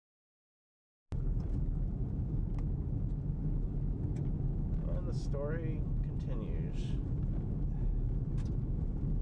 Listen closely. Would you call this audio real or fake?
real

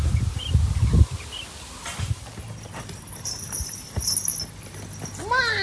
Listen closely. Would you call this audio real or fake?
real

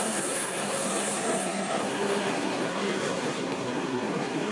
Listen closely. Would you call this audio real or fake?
fake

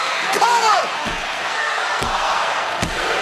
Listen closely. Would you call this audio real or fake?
fake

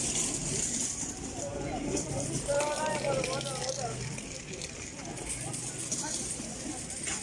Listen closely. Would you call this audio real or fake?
real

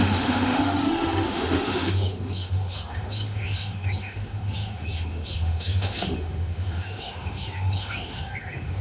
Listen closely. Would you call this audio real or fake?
fake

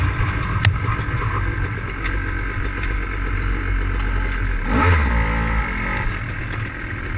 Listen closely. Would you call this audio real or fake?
real